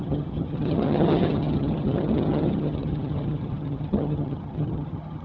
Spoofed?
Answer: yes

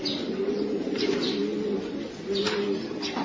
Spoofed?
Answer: no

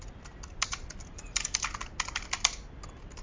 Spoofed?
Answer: no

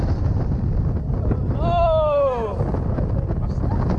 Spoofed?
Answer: no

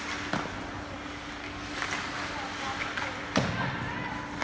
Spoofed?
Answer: no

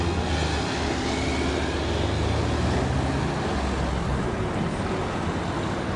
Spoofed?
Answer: no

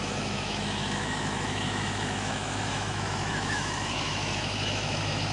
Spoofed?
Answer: yes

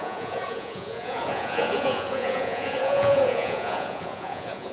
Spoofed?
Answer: yes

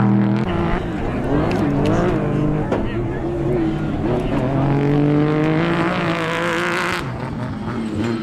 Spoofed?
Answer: no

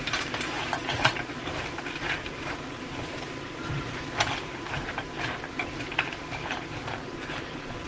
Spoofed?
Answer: yes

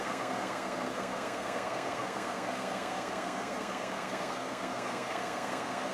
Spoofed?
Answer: yes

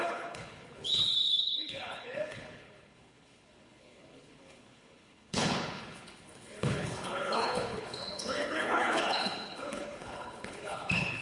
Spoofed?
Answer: yes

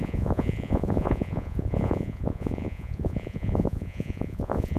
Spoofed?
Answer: yes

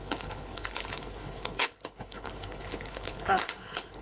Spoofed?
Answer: yes